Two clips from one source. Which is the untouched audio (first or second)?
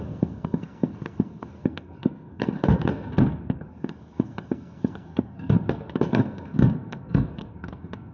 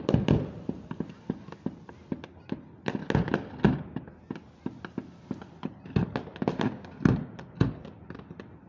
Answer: second